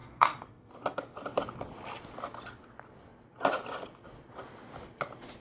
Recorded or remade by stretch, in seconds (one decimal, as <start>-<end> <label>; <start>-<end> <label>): 0.0-0.7 remade; 0.7-5.4 recorded